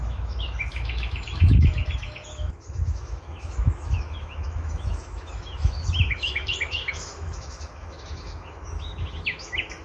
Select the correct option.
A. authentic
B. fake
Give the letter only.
B